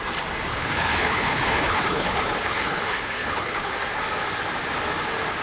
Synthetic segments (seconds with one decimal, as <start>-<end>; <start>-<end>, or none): 0.5-3.7